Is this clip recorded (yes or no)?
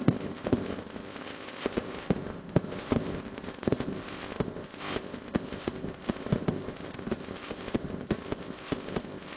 no